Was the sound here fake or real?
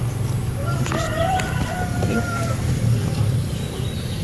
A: fake